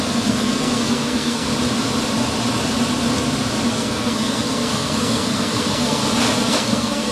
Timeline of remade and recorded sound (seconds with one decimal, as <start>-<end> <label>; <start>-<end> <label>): 0.0-1.5 remade; 1.5-3.7 recorded; 3.7-6.0 remade; 6.0-6.5 recorded; 6.5-7.1 remade